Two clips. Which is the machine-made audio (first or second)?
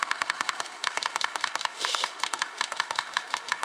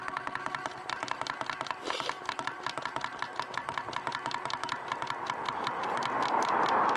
first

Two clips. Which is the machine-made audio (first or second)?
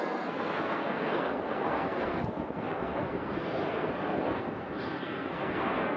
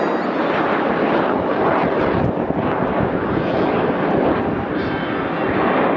first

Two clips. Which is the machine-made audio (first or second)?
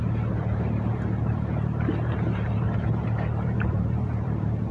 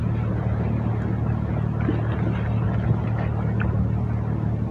first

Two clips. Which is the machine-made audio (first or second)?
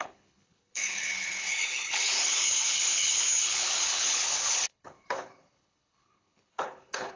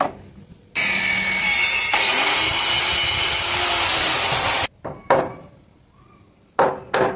first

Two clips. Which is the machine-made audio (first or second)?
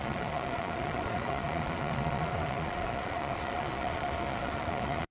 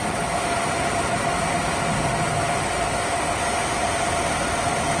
first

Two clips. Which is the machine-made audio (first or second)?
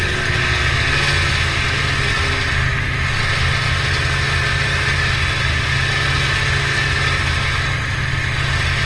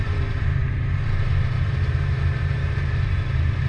second